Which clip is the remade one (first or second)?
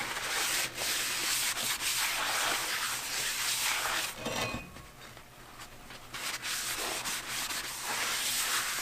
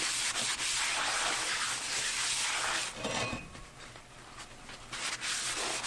second